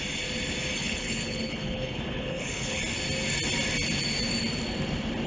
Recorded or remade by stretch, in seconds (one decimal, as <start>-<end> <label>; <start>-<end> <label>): 0.0-0.8 recorded; 0.8-2.8 remade; 2.8-5.3 recorded